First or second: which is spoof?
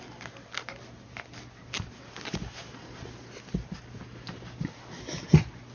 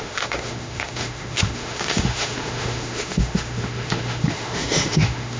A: second